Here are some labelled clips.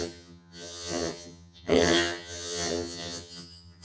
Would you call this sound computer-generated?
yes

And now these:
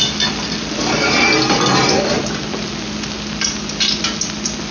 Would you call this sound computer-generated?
no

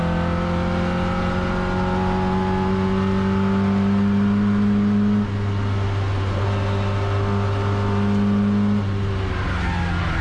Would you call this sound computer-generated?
no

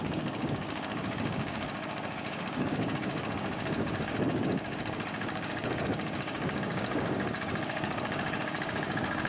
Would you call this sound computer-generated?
yes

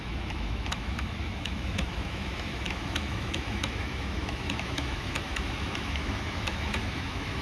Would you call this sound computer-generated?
yes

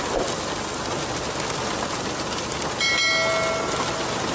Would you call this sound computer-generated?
no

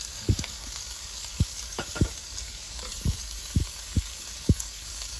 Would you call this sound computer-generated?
yes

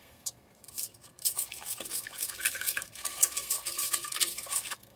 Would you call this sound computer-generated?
yes